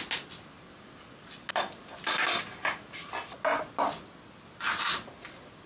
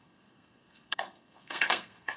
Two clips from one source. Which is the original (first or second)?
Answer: first